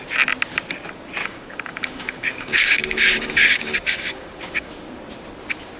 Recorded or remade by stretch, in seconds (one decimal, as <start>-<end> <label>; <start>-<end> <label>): 0.0-1.2 recorded; 1.2-4.7 remade; 4.7-5.8 recorded